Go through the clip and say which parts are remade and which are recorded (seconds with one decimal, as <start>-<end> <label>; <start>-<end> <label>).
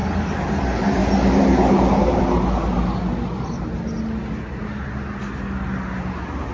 0.0-1.0 recorded; 1.0-2.2 remade; 2.2-6.5 recorded